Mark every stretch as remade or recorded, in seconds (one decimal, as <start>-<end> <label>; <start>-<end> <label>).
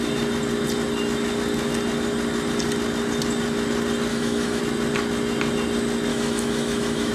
0.0-4.1 recorded; 4.1-4.6 remade; 4.6-6.1 recorded; 6.1-7.1 remade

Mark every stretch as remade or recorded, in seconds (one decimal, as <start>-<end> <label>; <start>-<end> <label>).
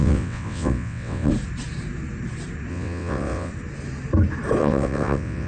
0.0-1.3 remade; 1.3-2.7 recorded; 2.7-3.5 remade; 3.5-4.6 recorded; 4.6-5.5 remade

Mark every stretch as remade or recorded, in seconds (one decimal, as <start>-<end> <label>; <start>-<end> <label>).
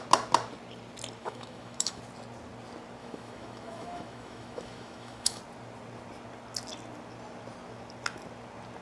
0.0-1.2 recorded; 1.2-2.0 remade; 2.0-3.0 recorded; 3.0-5.4 remade; 5.4-8.8 recorded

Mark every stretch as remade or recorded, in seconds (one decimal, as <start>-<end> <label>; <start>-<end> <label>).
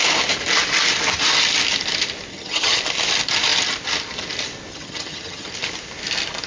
0.0-2.3 recorded; 2.3-2.8 remade; 2.8-4.7 recorded; 4.7-5.5 remade; 5.5-6.5 recorded